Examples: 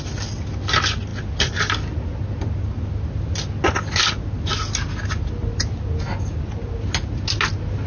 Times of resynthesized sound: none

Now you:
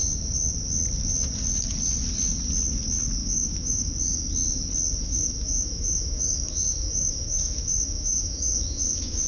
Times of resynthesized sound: 3.2-3.9; 5.0-9.3

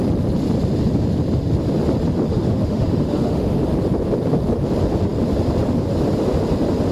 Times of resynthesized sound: 2.3-3.6

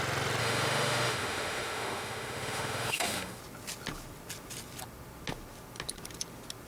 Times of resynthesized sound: 0.4-3.4

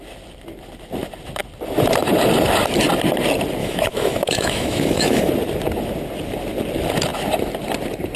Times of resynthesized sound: 3.6-5.3

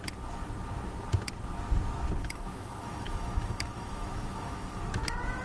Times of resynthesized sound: 2.2-4.8